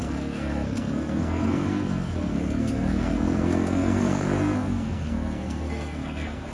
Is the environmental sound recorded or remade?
remade